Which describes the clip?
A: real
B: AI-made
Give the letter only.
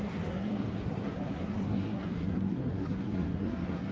B